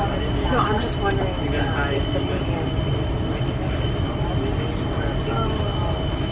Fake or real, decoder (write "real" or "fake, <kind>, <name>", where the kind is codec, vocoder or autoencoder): real